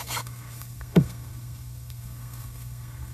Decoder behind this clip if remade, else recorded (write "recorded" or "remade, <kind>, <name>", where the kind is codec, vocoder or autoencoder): remade, codec, SNAC